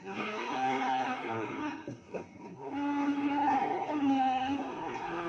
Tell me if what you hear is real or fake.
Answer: fake